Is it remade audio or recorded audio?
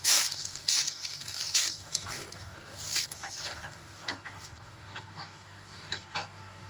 remade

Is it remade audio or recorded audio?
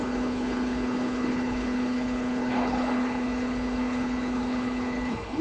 remade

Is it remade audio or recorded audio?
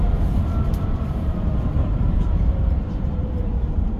remade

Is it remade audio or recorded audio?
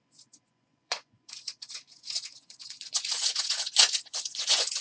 remade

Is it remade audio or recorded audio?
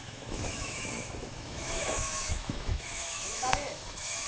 remade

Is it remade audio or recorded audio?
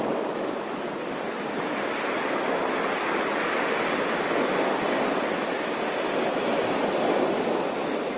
recorded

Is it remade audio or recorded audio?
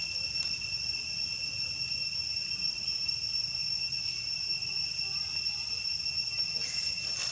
recorded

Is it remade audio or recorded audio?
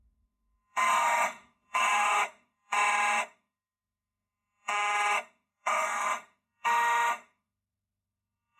remade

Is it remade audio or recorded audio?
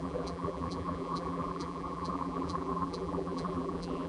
remade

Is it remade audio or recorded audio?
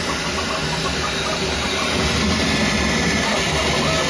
recorded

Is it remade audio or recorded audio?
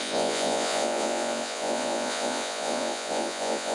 remade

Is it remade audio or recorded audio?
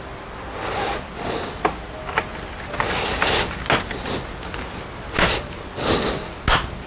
recorded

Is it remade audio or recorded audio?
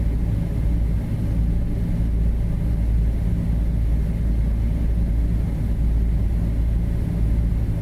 recorded